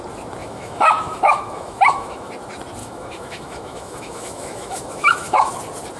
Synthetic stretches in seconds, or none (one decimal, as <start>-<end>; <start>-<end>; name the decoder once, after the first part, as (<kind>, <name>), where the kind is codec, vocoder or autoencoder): 0.4-2.3 (autoencoder, DAC-VAE); 2.8-5.5